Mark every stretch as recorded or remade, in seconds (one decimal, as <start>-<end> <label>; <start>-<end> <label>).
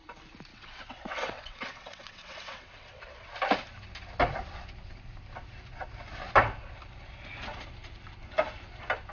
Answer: 0.0-0.5 recorded; 0.5-3.3 remade; 3.3-9.1 recorded